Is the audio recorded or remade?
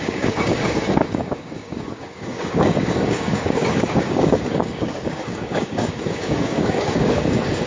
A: remade